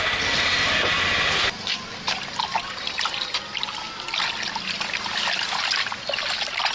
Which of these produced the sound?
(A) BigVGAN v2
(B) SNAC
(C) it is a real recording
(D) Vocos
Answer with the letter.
C